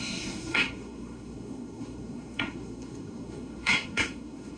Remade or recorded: remade